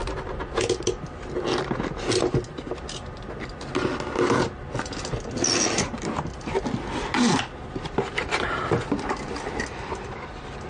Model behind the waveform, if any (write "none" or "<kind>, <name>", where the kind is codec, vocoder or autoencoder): none